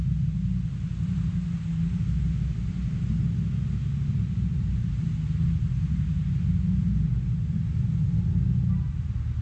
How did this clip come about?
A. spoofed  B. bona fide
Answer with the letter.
B